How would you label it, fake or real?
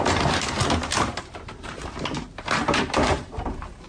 fake